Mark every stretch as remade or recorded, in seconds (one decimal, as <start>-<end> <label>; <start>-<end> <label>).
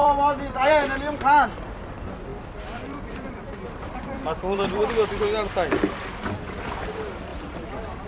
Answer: 0.0-0.7 remade; 0.7-2.3 recorded; 2.3-5.2 remade; 5.2-8.1 recorded